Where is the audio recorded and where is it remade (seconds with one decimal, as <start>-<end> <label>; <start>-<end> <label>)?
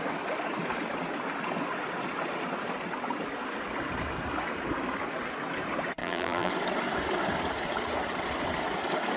0.0-6.0 recorded; 6.0-6.5 remade; 6.5-9.2 recorded